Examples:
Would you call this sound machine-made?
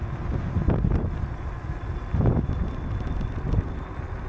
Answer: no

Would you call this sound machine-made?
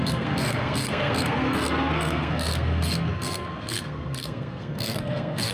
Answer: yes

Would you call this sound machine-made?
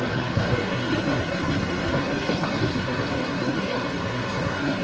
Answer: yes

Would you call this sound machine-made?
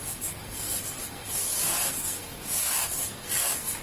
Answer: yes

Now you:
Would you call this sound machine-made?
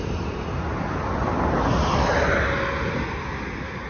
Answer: no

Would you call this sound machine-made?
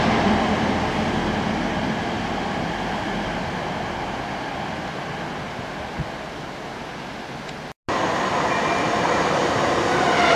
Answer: no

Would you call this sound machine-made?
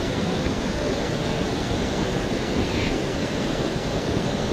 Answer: yes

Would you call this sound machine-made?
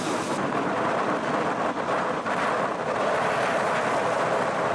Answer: no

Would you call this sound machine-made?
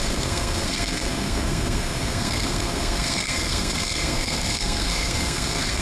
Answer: yes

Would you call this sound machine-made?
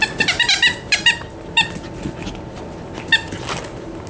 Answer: no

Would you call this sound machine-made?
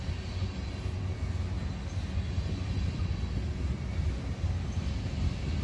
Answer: no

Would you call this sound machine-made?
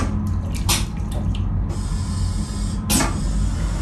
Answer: no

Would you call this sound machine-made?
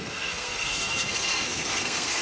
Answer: yes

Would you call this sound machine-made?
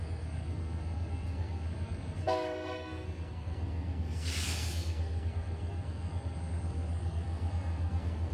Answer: yes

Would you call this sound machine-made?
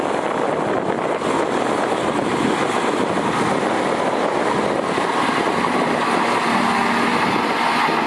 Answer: no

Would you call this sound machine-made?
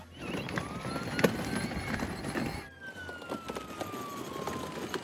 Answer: no